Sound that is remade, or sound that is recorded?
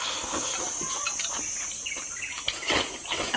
recorded